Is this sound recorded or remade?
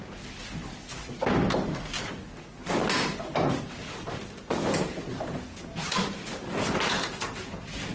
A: recorded